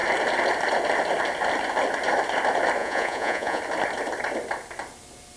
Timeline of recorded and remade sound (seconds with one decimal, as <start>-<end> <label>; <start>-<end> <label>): 0.0-2.8 recorded; 2.8-3.6 remade; 3.6-5.4 recorded

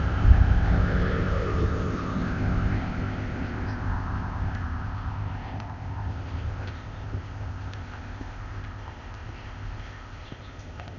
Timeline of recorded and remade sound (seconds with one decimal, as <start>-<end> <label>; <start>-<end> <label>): 0.0-11.0 remade

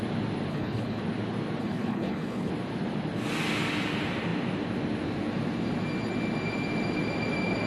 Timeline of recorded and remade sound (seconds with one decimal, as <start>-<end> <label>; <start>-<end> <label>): 0.0-0.5 recorded; 0.5-1.0 remade; 1.0-1.6 recorded; 1.6-2.5 remade; 2.5-7.7 recorded

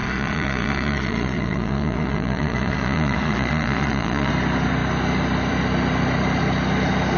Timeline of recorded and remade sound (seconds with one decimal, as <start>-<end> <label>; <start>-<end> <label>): 0.0-4.3 remade; 4.3-7.2 recorded

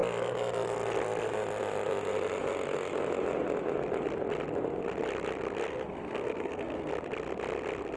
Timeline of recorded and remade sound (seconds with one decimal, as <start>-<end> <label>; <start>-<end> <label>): 0.0-5.7 recorded; 5.7-6.9 remade; 6.9-8.0 recorded

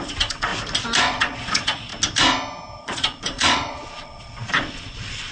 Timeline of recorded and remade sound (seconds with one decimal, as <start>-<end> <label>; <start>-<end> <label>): 0.0-0.5 remade; 0.5-1.0 recorded; 1.0-1.9 remade; 1.9-2.8 recorded; 2.8-5.3 remade